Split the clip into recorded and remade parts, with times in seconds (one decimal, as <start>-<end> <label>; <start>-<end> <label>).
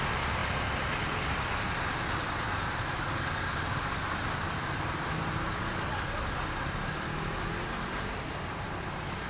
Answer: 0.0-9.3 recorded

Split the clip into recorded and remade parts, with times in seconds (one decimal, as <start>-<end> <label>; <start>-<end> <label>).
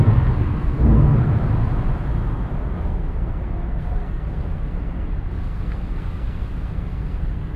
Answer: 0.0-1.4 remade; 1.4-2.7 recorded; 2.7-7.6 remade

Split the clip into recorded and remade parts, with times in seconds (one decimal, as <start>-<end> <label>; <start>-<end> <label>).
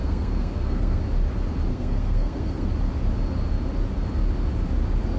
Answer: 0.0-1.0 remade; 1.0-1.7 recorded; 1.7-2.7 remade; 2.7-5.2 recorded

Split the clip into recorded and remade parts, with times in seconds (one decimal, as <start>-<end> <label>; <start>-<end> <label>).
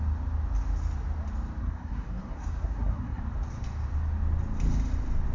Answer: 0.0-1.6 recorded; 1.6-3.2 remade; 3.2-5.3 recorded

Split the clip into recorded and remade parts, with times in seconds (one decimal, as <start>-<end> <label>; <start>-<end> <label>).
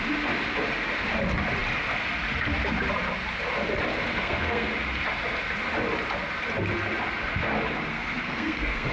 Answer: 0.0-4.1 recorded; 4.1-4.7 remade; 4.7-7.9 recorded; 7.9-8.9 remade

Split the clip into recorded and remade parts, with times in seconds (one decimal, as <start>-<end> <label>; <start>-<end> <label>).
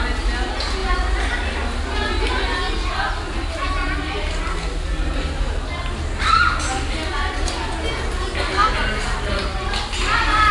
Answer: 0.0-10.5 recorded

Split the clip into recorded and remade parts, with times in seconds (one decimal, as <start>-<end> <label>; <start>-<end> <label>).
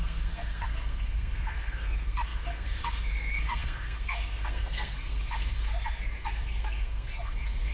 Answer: 0.0-7.7 remade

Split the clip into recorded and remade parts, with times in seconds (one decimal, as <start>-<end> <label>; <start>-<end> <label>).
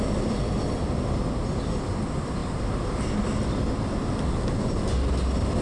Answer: 0.0-5.6 recorded